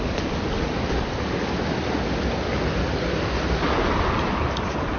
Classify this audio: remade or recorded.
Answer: recorded